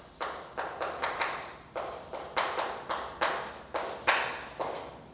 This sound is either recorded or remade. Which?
recorded